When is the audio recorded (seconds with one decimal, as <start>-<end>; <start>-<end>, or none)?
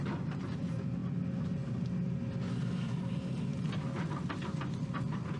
1.0-3.1